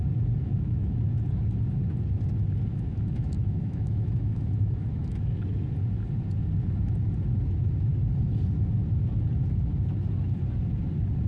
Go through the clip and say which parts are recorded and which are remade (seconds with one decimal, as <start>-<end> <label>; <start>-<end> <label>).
0.0-0.4 recorded; 0.4-1.0 remade; 1.0-2.7 recorded; 2.7-5.2 remade; 5.2-11.3 recorded